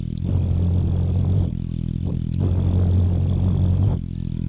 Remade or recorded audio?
recorded